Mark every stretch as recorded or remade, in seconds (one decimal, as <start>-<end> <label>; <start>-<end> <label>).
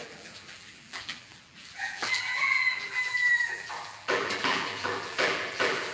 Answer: 0.0-5.9 remade